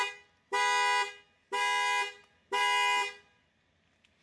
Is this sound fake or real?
real